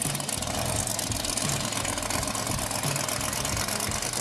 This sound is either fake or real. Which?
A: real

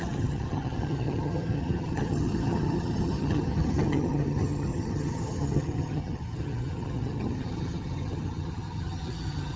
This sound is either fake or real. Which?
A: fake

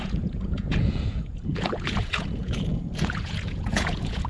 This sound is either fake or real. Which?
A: fake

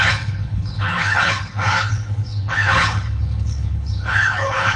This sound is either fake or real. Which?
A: fake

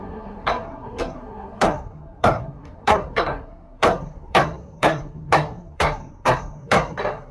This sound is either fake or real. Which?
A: fake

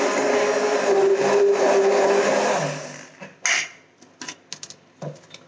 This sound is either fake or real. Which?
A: real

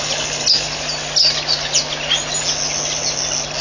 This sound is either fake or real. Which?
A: real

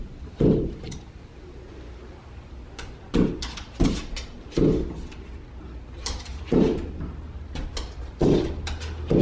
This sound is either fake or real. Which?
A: real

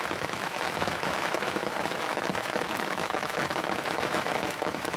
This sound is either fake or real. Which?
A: fake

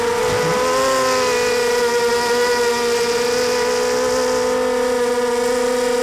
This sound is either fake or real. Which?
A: real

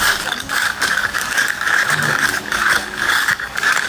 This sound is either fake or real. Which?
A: fake